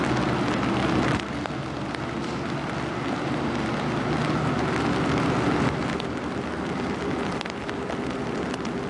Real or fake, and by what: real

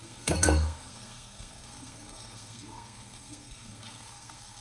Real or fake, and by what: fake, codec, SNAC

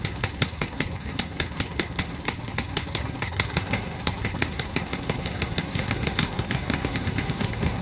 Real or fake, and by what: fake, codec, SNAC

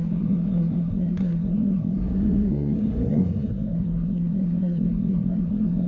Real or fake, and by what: fake, codec, SNAC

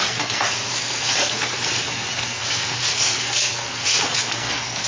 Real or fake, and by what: fake, codec, SNAC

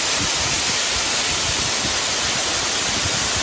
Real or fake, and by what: real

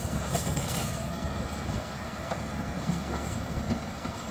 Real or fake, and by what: fake, codec, SNAC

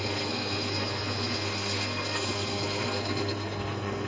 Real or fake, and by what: fake, codec, SNAC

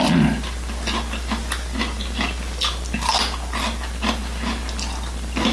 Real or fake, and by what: real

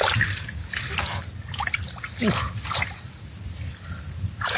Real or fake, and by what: real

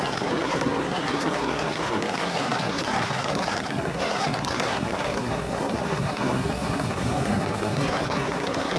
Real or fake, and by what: fake, codec, SNAC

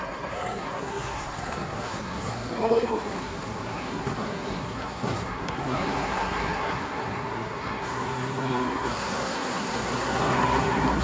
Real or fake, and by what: fake, codec, SNAC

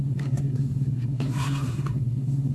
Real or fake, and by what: fake, codec, SNAC